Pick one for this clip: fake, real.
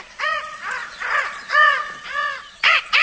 fake